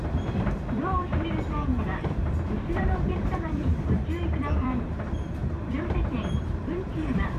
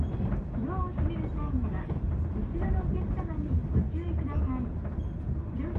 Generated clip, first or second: first